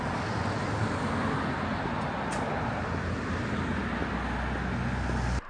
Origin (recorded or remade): recorded